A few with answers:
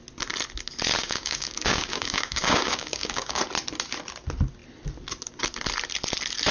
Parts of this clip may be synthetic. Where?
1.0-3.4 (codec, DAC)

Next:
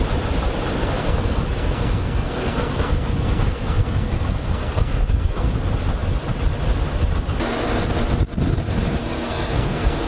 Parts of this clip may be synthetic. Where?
0.8-5.5 (codec, SNAC); 9.0-10.1

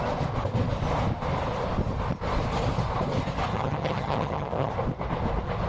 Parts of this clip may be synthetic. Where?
3.5-4.7 (vocoder, HiFi-GAN)

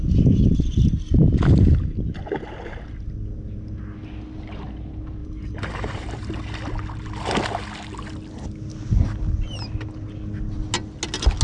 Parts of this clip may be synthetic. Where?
5.2-6.4 (vocoder, BigVGAN v2)

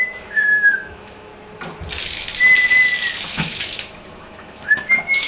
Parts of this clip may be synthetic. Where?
0.0-1.3 (autoencoder, DAC-VAE); 3.3-5.3

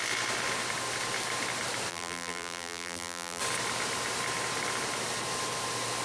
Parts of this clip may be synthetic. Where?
1.9-3.4 (vocoder, BigVGAN v2)

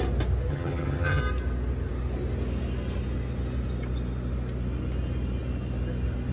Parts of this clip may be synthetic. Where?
0.5-1.2 (vocoder, HiFi-GAN)